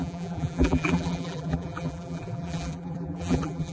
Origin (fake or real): fake